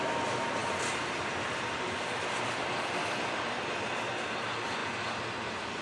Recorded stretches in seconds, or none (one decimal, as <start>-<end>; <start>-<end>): 0.0-5.8